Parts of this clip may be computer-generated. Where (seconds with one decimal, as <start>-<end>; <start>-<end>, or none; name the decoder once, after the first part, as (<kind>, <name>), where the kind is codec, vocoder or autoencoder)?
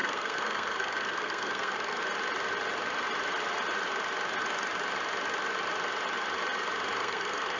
0.0-2.0 (codec, SNAC); 7.0-7.6